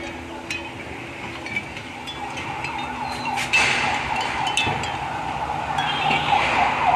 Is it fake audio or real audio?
real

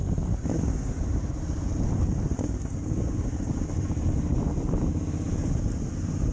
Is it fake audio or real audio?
fake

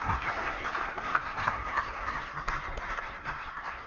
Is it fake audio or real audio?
fake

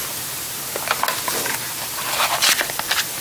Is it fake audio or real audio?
real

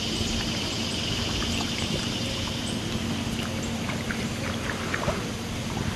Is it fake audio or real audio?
fake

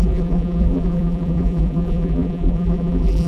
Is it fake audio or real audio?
fake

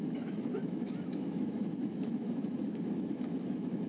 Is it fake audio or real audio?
fake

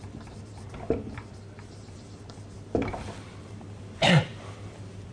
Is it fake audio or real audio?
fake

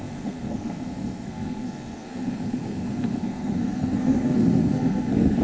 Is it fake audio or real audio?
fake